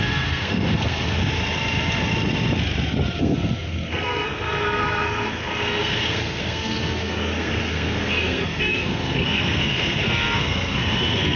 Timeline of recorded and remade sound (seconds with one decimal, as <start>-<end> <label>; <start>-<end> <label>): 0.0-1.2 remade; 1.2-3.2 recorded; 3.2-11.4 remade

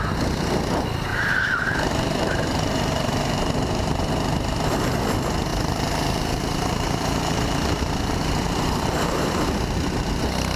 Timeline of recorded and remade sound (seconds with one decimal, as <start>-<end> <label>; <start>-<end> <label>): 0.0-1.1 recorded; 1.1-4.0 remade; 4.0-5.5 recorded; 5.5-9.9 remade; 9.9-10.6 recorded

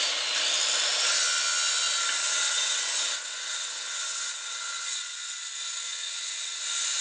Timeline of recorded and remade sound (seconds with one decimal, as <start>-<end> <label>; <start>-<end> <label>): 0.0-2.2 recorded; 2.2-5.2 remade; 5.2-5.9 recorded; 5.9-6.6 remade; 6.6-7.0 recorded

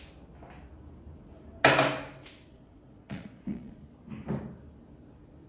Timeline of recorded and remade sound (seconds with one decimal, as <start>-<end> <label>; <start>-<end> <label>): 0.0-2.5 recorded; 2.5-3.8 remade; 3.8-5.5 recorded